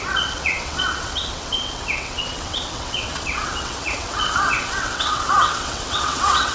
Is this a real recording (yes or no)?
no